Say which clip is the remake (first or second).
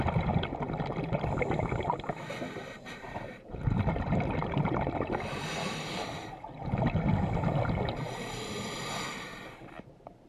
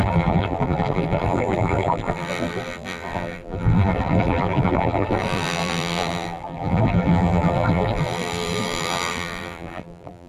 second